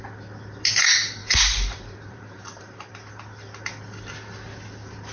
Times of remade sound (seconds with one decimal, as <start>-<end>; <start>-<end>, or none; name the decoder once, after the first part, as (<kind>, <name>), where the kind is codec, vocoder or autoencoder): 1.2-2.9 (vocoder, BigVGAN v2)